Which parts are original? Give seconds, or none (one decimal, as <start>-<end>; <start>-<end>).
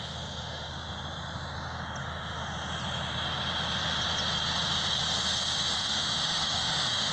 0.7-2.0; 2.4-5.7